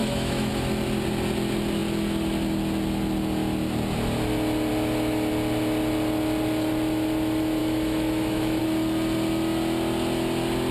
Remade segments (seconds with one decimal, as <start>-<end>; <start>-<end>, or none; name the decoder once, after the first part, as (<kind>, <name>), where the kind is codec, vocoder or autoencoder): 0.0-0.5 (autoencoder, DAC-VAE); 7.6-8.6

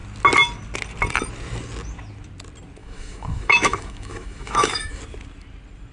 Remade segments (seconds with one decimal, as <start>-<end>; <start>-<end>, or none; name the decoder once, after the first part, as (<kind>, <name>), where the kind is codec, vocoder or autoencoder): 2.8-5.0 (autoencoder, DAC-VAE)

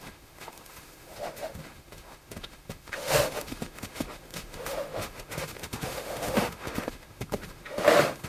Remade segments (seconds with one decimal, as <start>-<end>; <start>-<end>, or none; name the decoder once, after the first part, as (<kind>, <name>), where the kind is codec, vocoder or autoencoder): 0.0-8.3 (autoencoder, DAC-VAE)